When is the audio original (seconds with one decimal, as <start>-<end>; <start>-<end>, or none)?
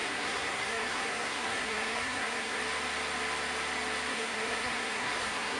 2.6-4.1